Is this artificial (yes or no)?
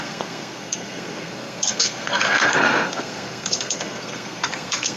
yes